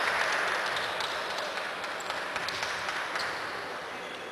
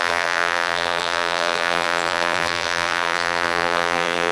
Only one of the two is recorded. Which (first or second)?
first